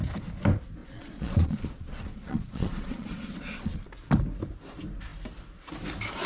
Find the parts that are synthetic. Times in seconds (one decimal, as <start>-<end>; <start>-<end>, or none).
0.8-3.8